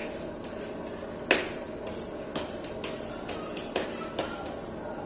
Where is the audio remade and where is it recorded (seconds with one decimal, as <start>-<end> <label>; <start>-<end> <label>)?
0.0-5.1 recorded